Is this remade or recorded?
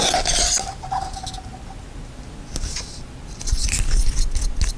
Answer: recorded